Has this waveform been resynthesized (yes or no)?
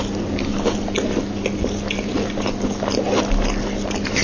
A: no